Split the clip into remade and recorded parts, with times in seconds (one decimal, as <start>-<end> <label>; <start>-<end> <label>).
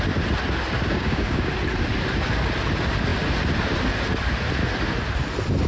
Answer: 0.0-0.9 recorded; 0.9-1.5 remade; 1.5-5.7 recorded